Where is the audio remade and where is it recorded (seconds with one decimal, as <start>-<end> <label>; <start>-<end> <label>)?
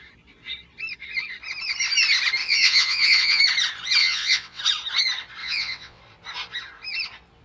0.0-2.4 recorded; 2.4-3.4 remade; 3.4-4.0 recorded; 4.0-4.6 remade; 4.6-5.4 recorded; 5.4-6.0 remade; 6.0-7.4 recorded